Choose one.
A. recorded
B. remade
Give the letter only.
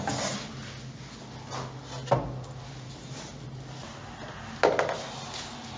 A